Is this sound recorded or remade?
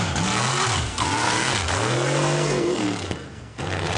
remade